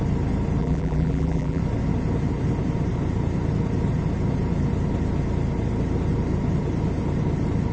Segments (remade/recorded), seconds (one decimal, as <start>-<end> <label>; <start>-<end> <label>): 0.0-0.6 recorded; 0.6-1.6 remade; 1.6-7.7 recorded